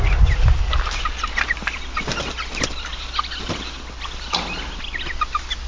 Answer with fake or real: real